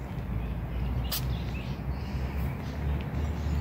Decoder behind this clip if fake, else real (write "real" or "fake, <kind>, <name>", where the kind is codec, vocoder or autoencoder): real